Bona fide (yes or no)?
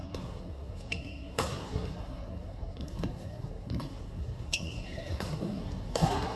no